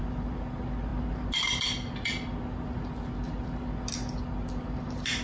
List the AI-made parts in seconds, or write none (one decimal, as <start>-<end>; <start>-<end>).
none